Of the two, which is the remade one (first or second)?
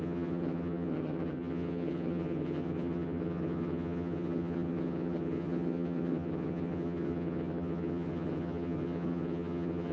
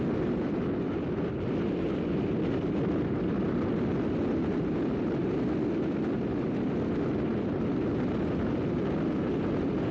first